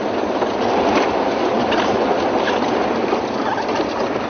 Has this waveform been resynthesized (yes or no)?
yes